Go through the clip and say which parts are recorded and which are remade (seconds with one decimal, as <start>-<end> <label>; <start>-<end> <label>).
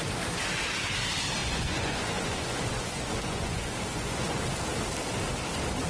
0.0-1.4 recorded; 1.4-4.4 remade; 4.4-5.9 recorded